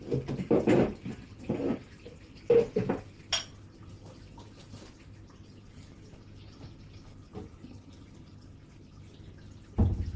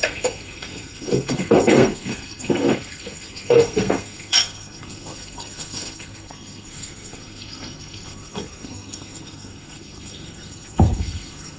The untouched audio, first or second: first